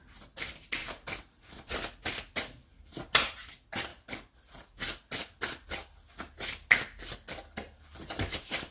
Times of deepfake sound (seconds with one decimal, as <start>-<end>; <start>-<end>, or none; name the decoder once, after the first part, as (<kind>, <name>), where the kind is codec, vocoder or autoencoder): 0.8-1.7 (vocoder, BigVGAN v2); 2.7-3.4